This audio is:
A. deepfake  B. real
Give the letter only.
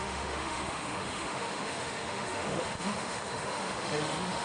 A